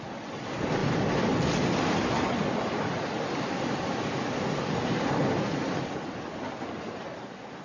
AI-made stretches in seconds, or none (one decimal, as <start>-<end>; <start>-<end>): none